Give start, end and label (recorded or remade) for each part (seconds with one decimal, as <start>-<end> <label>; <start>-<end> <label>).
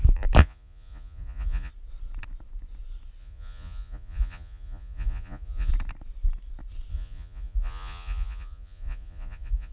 0.0-0.4 recorded; 0.4-1.7 remade; 1.7-3.2 recorded; 3.2-5.7 remade; 5.7-6.9 recorded; 6.9-9.7 remade